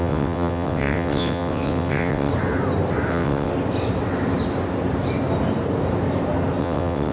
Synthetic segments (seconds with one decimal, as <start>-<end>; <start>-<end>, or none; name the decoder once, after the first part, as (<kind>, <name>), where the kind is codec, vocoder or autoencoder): 0.0-2.3 (vocoder, WaveNeXt); 3.1-3.5; 6.6-7.1